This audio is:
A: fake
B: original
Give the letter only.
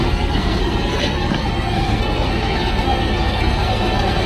A